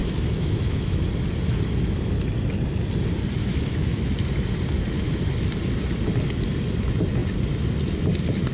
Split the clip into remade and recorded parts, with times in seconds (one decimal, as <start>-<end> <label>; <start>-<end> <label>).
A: 0.0-1.0 remade; 1.0-3.4 recorded; 3.4-4.1 remade; 4.1-8.5 recorded